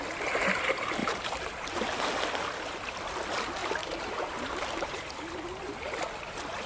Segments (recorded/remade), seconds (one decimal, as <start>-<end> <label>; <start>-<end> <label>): 0.0-1.0 recorded; 1.0-1.7 remade; 1.7-3.6 recorded; 3.6-5.0 remade; 5.0-6.7 recorded